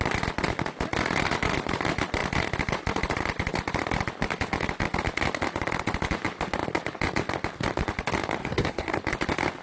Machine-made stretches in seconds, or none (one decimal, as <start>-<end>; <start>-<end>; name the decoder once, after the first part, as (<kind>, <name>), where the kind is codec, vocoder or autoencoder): 8.4-8.9 (codec, SNAC)